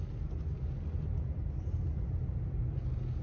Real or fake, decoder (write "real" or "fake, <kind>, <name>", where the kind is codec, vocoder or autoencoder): real